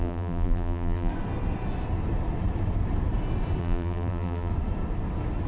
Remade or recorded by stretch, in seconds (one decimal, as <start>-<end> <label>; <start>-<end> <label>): 0.0-1.1 remade; 1.1-3.6 recorded; 3.6-4.5 remade; 4.5-5.5 recorded